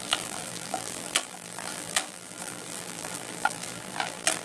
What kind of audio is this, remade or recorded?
remade